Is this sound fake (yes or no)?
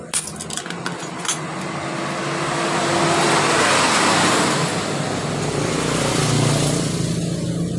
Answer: no